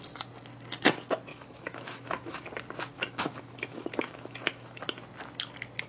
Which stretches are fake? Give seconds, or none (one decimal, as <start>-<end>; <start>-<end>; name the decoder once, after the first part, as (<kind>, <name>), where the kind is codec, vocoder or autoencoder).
1.3-2.4 (autoencoder, DAC-VAE); 2.9-4.8